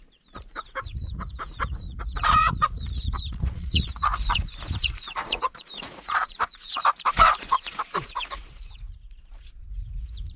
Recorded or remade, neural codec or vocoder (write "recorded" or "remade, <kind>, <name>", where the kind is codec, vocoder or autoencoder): remade, vocoder, Vocos